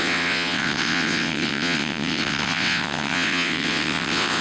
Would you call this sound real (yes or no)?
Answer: no